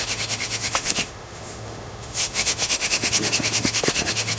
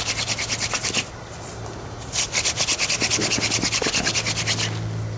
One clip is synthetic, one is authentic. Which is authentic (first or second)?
second